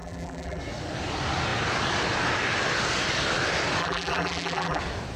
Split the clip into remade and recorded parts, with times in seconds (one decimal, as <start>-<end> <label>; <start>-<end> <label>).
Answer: 0.0-0.6 remade; 0.6-3.8 recorded; 3.8-4.8 remade; 4.8-5.2 recorded

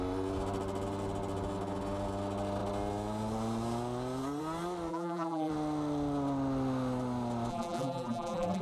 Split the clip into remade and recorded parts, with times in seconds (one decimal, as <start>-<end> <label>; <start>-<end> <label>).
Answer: 0.0-4.9 recorded; 4.9-5.5 remade; 5.5-7.5 recorded; 7.5-8.6 remade

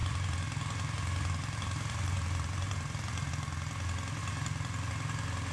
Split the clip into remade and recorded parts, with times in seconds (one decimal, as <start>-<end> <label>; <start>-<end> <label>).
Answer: 0.0-3.3 remade; 3.3-4.2 recorded; 4.2-4.9 remade; 4.9-5.5 recorded

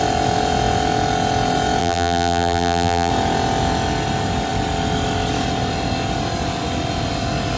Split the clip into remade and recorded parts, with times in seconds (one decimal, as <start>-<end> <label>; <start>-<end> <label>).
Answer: 0.0-1.8 recorded; 1.8-3.1 remade; 3.1-7.6 recorded

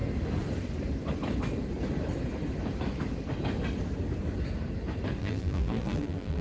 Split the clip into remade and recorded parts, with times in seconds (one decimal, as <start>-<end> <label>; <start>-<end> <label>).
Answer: 0.0-5.2 recorded; 5.2-6.4 remade

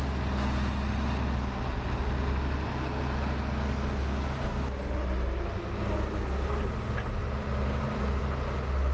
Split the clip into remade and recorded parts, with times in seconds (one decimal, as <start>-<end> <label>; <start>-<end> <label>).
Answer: 0.0-7.2 recorded; 7.2-8.2 remade; 8.2-8.9 recorded

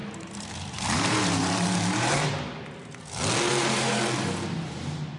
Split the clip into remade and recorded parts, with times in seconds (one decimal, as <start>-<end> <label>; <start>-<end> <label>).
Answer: 0.0-2.3 remade; 2.3-3.5 recorded; 3.5-4.0 remade; 4.0-5.2 recorded

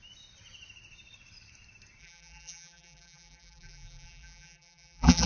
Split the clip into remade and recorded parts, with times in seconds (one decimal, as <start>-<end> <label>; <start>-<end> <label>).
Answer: 0.0-2.0 recorded; 2.0-5.3 remade